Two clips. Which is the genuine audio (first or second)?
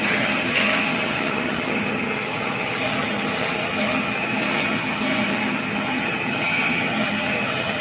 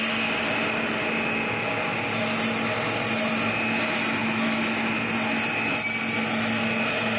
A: second